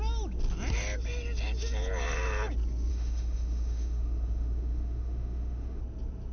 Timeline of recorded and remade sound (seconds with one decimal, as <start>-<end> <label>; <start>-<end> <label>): 0.0-2.9 recorded; 2.9-5.8 remade; 5.8-6.3 recorded